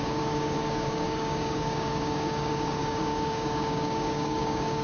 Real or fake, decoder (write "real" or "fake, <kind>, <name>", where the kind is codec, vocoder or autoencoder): fake, codec, DAC